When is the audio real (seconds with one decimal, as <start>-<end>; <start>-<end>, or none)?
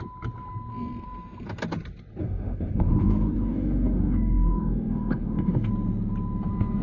0.0-2.2; 5.7-6.8